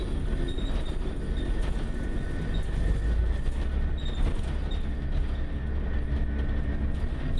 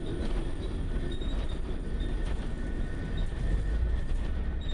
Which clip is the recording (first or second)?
first